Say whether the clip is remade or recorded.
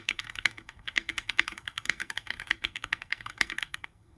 remade